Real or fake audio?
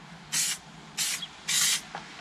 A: real